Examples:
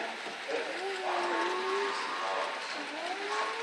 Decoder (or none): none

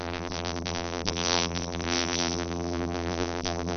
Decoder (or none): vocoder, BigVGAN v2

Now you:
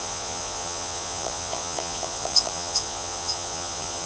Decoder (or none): vocoder, Vocos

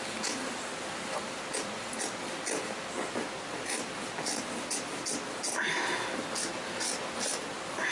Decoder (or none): none